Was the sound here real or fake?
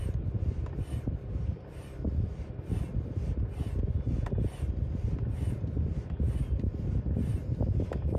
real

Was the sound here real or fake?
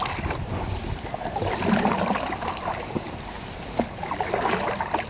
real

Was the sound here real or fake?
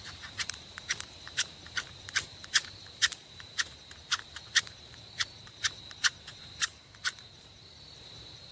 fake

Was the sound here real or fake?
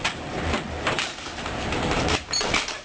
fake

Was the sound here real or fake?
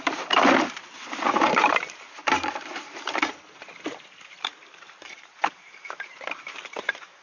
fake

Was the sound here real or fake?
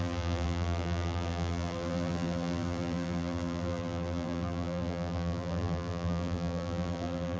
fake